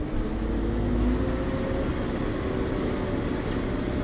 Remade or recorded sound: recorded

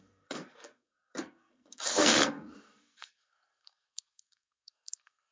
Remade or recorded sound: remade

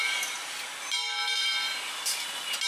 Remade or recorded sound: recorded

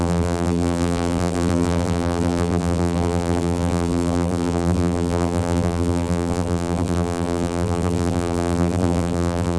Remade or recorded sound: remade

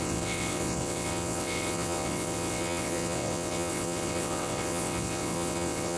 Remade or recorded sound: remade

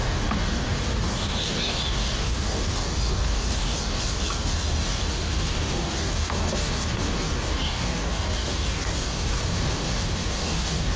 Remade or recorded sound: remade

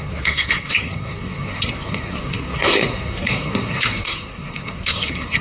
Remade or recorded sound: remade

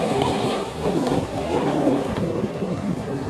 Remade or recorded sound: remade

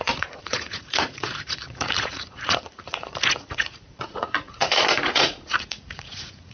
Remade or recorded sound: remade